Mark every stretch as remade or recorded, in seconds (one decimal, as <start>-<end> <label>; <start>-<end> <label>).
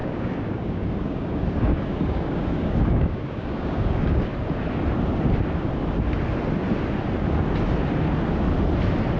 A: 0.0-4.3 remade; 4.3-9.2 recorded